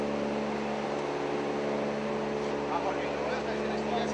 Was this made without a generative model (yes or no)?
yes